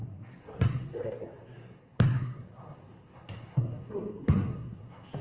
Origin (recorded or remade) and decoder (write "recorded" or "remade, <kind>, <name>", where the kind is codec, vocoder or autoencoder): remade, codec, SNAC